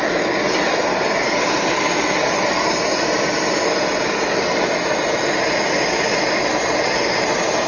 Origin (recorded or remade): recorded